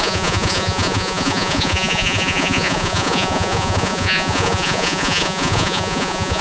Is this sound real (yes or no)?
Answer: no